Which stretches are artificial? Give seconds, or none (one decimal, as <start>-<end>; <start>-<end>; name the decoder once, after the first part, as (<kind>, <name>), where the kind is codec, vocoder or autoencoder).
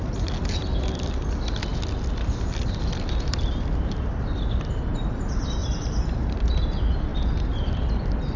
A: 5.6-6.5 (vocoder, BigVGAN v2)